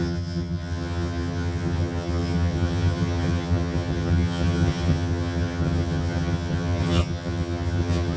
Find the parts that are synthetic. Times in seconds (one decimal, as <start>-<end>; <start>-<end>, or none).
0.0-8.2